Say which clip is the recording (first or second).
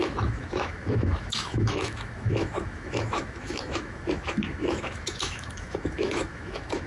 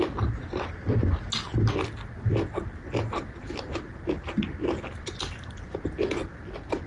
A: second